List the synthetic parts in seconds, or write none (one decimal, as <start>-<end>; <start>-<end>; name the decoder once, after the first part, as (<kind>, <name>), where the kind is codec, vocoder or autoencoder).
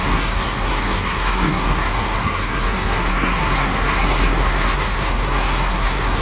0.0-6.2 (codec, SNAC)